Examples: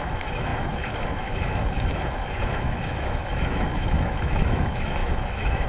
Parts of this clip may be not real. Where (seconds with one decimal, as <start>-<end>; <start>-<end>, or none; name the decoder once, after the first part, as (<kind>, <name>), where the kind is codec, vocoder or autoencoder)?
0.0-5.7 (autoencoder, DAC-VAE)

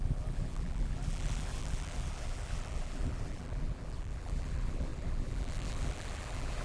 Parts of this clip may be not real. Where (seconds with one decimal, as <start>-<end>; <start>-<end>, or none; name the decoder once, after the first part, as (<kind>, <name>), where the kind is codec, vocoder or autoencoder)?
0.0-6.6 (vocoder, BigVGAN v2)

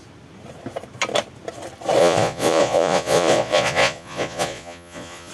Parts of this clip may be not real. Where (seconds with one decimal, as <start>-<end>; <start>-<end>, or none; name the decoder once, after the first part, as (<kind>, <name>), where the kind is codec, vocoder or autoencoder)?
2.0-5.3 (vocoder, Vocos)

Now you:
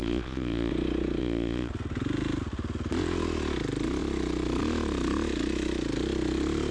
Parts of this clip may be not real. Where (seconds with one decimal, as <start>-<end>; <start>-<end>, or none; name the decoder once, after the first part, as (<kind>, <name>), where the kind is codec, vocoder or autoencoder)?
0.0-0.7 (vocoder, Vocos); 1.2-1.7